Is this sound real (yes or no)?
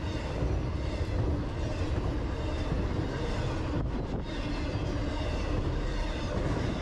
yes